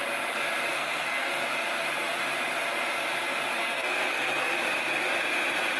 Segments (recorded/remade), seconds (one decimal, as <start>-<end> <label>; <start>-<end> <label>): 0.0-0.7 recorded; 0.7-1.3 remade; 1.3-3.6 recorded; 3.6-4.5 remade; 4.5-5.8 recorded